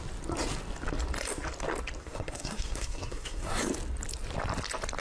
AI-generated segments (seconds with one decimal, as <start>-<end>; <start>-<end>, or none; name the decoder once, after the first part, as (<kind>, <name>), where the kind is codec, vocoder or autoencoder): 2.0-3.6 (codec, SNAC)

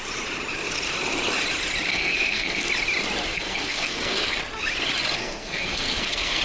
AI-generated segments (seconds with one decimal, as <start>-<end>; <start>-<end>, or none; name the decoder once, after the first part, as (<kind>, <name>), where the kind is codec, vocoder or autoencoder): 1.9-2.7 (codec, SNAC); 3.3-4.4; 5.2-6.4

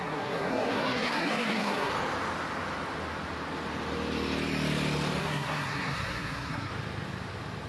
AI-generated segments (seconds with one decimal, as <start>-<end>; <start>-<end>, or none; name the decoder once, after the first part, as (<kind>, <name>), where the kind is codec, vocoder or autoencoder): 0.0-1.9 (codec, SNAC); 5.2-6.7